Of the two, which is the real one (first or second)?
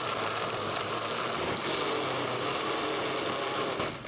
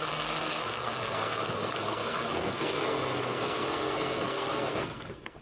first